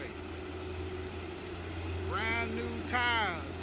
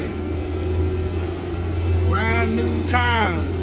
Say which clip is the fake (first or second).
second